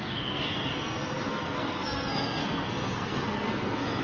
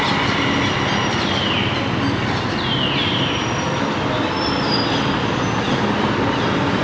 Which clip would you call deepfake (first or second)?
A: first